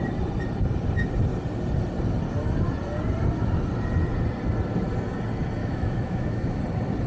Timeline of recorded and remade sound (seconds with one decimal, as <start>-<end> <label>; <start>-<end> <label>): 0.0-5.6 recorded; 5.6-6.6 remade; 6.6-7.1 recorded